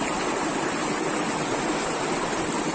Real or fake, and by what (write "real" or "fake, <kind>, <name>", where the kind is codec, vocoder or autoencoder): real